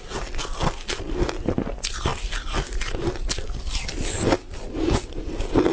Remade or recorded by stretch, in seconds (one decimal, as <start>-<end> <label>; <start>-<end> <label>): 0.0-5.7 recorded